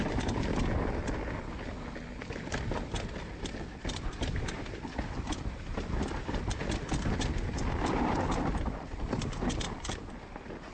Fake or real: real